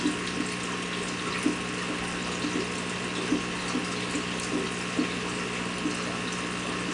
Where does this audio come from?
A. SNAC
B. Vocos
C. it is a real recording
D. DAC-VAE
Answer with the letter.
C